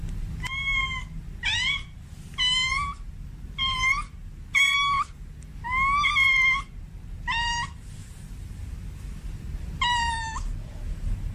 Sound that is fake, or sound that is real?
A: real